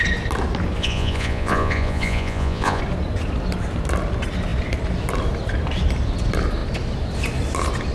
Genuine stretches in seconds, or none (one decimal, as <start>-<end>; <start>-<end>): 0.0-0.8; 2.8-7.9